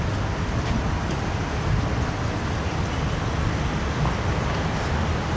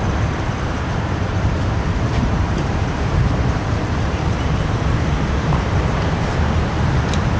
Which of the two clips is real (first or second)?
first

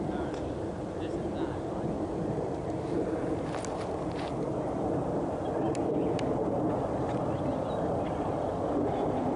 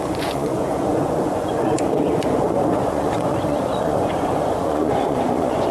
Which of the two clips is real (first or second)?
first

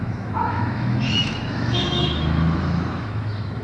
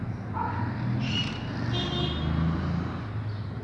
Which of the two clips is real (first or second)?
second